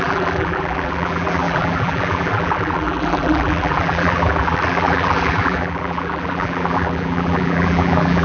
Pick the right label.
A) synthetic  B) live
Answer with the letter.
A